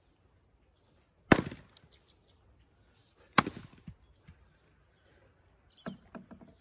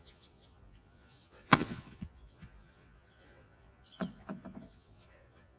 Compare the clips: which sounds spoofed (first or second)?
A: second